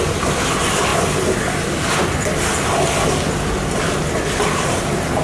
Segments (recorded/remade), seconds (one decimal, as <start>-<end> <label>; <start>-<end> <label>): 0.0-5.2 recorded